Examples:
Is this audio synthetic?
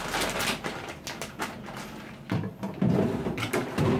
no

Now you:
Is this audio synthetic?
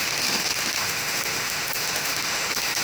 yes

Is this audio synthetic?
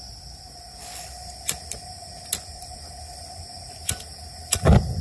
no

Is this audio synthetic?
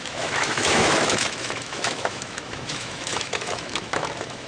yes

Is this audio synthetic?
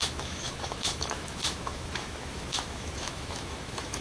yes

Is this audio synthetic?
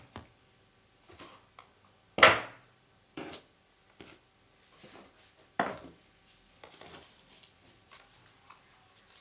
no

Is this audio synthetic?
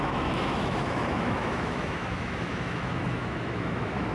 yes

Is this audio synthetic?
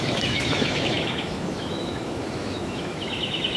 yes